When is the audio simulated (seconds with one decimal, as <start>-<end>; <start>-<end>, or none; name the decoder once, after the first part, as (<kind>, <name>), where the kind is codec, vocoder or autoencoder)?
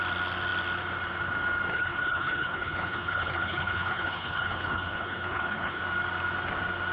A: 1.7-5.8 (codec, HILCodec)